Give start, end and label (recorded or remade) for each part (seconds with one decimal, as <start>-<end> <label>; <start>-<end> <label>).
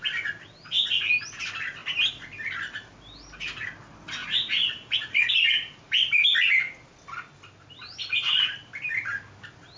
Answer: 0.0-4.2 recorded; 4.2-5.3 remade; 5.3-9.8 recorded